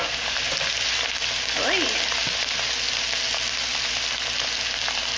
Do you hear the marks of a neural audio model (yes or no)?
no